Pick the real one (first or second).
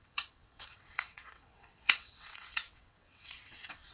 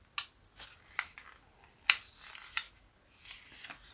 second